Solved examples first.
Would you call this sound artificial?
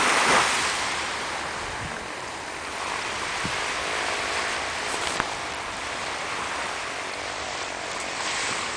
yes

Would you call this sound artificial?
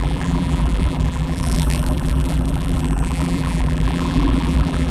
yes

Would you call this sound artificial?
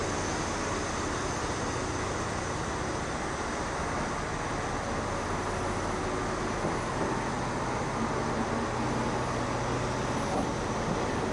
no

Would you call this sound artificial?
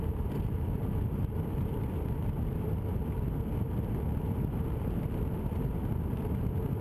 no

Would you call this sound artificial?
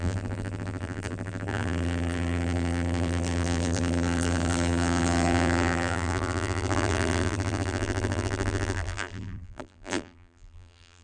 yes